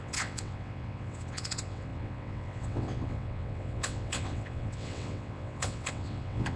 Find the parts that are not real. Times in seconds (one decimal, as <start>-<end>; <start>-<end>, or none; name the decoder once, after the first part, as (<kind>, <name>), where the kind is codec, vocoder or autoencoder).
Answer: 0.0-6.6 (vocoder, WaveNeXt)